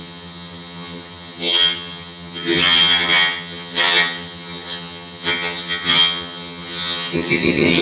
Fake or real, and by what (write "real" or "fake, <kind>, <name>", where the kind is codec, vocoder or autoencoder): fake, vocoder, HiFi-GAN